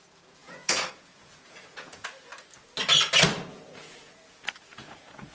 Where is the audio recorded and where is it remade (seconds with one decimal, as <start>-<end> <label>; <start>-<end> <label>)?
0.0-2.3 remade; 2.3-3.5 recorded; 3.5-5.3 remade